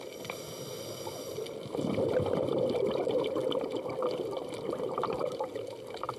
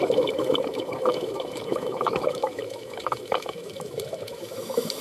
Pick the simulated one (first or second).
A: second